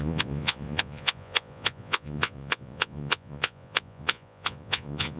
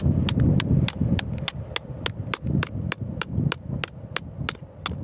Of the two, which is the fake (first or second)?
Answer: first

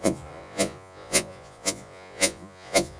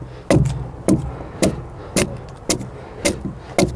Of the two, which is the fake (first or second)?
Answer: first